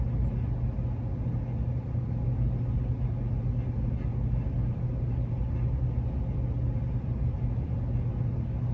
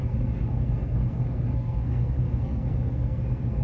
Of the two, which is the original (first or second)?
first